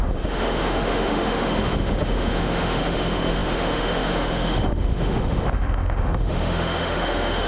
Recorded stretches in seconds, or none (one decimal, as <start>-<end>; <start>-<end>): none